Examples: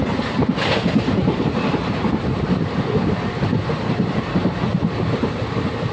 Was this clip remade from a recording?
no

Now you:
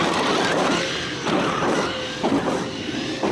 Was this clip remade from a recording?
no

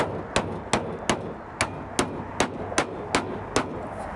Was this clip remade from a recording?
no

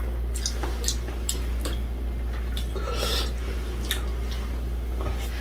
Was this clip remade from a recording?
no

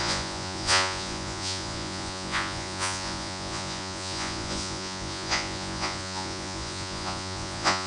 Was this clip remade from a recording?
yes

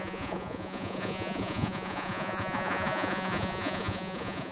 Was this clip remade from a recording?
yes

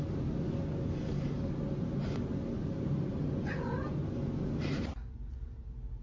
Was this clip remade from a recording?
no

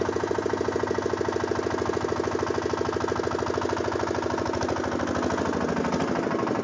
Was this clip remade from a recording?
no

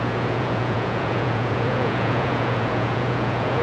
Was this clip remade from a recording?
yes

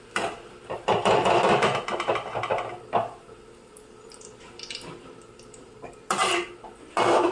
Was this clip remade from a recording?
no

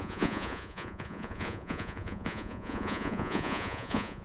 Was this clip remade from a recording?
yes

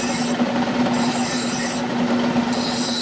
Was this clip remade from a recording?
no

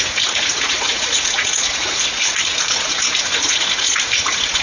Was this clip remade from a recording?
yes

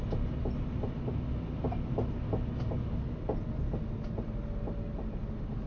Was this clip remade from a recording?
no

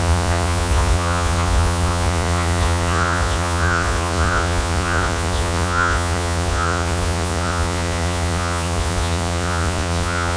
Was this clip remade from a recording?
yes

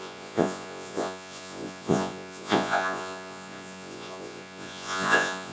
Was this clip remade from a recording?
yes